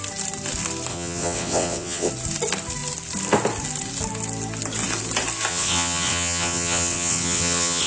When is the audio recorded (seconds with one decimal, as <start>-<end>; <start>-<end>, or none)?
0.0-0.9; 2.1-5.5